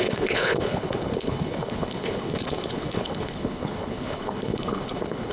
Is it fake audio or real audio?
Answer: fake